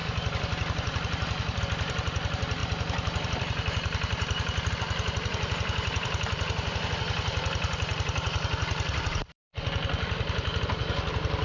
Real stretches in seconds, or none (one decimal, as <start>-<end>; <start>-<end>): none